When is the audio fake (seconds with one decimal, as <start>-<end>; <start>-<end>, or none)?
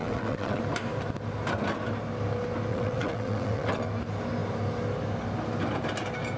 0.0-0.6; 2.7-3.8